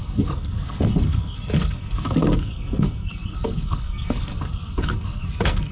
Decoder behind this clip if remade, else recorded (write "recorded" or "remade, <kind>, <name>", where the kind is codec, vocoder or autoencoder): remade, codec, SNAC